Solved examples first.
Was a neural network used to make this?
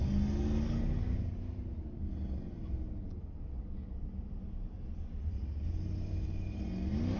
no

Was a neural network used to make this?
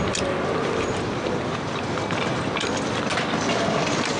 no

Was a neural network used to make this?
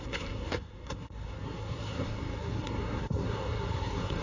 yes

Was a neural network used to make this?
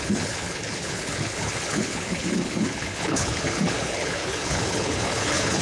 yes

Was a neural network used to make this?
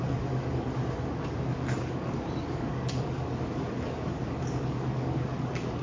yes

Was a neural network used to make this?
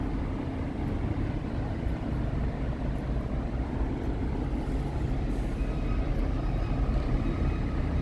yes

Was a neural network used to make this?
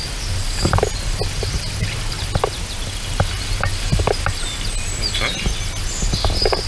no